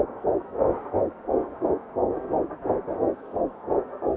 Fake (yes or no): yes